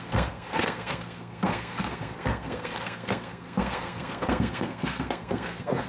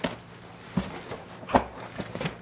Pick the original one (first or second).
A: second